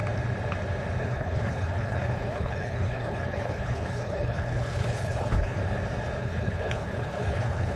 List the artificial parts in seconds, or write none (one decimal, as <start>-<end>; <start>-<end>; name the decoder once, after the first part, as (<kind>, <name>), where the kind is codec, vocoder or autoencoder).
1.0-5.6 (codec, HILCodec); 6.2-7.8